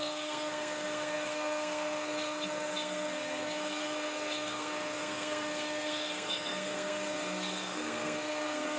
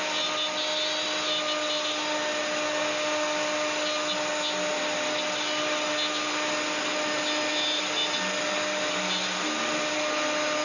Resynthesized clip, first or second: first